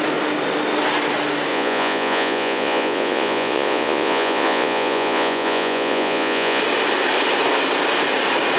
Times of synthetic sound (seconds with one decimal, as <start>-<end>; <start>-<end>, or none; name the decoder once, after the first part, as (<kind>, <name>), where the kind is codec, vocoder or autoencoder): 1.5-6.6 (vocoder, Vocos)